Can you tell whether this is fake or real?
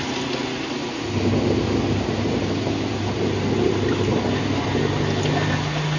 real